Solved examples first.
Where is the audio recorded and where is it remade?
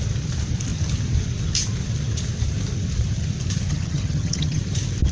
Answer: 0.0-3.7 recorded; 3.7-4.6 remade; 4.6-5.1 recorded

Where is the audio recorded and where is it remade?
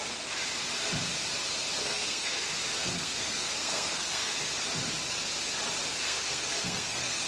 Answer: 0.0-1.8 recorded; 1.8-2.4 remade; 2.4-2.8 recorded; 2.8-4.3 remade; 4.3-5.9 recorded; 5.9-7.3 remade